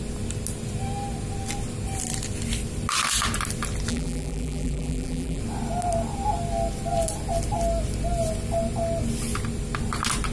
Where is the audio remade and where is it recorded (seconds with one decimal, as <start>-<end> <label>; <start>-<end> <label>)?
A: 0.0-3.9 recorded; 3.9-5.4 remade; 5.4-10.3 recorded

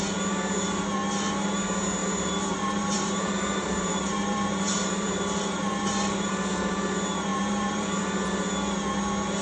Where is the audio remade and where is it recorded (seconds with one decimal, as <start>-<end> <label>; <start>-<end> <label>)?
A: 0.0-2.0 recorded; 2.0-6.3 remade; 6.3-7.3 recorded; 7.3-8.0 remade; 8.0-9.4 recorded

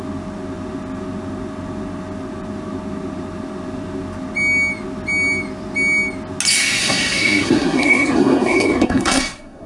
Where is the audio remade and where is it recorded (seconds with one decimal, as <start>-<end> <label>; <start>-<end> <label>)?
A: 0.0-6.8 recorded; 6.8-9.7 remade